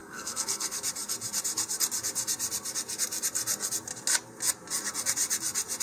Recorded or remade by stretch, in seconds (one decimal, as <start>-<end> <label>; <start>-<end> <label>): 0.0-0.8 remade; 0.8-5.8 recorded